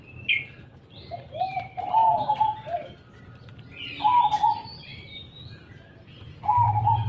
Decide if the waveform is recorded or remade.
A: recorded